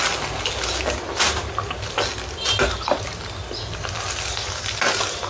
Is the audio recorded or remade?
recorded